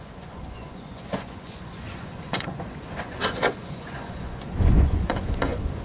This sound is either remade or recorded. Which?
remade